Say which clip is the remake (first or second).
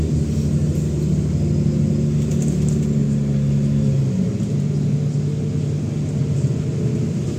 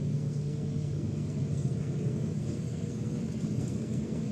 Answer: second